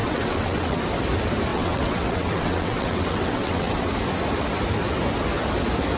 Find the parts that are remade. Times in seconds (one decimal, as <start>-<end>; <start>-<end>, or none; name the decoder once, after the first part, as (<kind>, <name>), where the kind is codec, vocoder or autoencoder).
0.0-0.8 (vocoder, WaveNeXt); 1.5-3.9